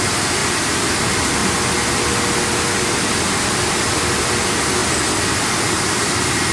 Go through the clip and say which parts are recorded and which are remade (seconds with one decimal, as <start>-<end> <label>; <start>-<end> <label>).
0.0-6.5 recorded